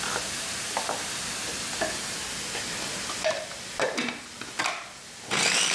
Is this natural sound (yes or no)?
yes